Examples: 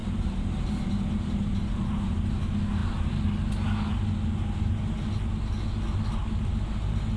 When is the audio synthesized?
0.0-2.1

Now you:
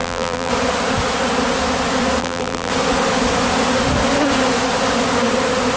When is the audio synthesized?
0.0-0.5; 2.2-2.7

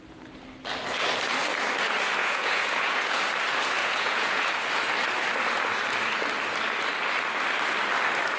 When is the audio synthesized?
2.2-3.2; 3.8-4.4

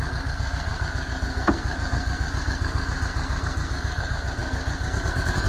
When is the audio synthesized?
0.0-5.5

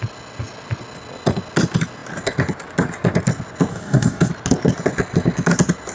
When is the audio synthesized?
3.7-4.3

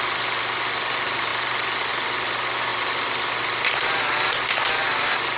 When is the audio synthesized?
1.3-1.8; 2.7-4.0

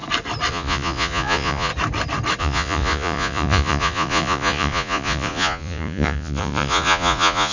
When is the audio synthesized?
0.5-1.7; 2.4-7.5

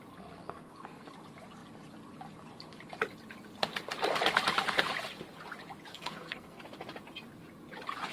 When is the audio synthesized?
0.4-1.1; 5.9-6.6